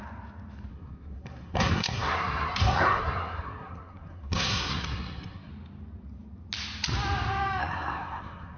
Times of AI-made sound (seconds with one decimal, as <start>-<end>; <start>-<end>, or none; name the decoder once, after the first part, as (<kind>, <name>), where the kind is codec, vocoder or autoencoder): 0.7-5.5 (codec, SNAC); 7.6-8.6